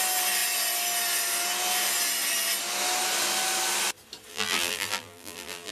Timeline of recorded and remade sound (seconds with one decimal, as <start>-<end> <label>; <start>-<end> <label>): 0.0-4.3 recorded; 4.3-5.7 remade